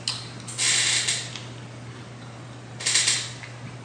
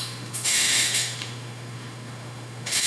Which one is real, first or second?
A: first